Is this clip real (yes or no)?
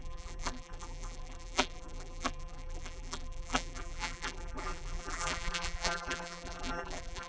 no